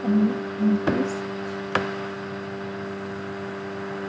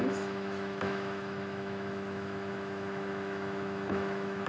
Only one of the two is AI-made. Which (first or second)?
second